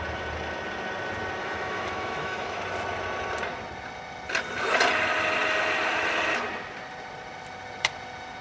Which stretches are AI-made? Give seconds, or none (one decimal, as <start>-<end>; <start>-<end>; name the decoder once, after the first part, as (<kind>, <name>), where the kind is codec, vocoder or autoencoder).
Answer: 1.4-2.6 (autoencoder, DAC-VAE)